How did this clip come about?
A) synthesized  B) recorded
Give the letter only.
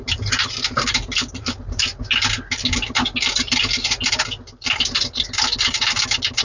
B